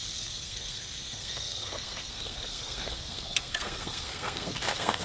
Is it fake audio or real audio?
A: fake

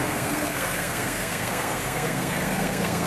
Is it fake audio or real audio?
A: fake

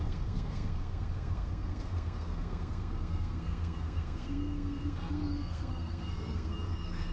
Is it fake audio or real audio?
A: fake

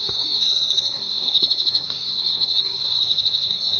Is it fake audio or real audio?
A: fake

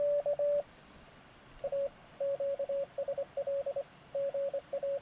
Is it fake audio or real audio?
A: real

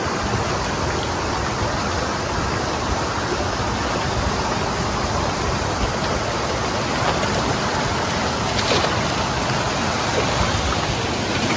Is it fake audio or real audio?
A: real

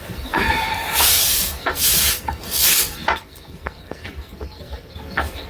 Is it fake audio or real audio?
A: fake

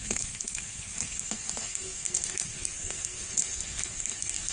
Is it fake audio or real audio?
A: fake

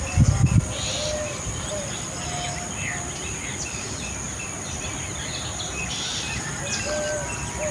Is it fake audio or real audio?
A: real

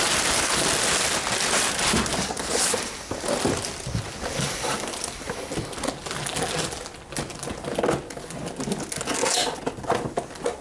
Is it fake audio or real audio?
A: real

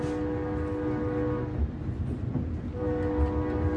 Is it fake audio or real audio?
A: real